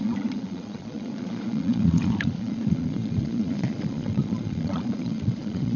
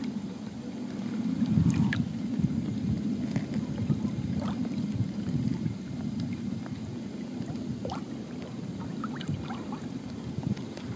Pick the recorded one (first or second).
second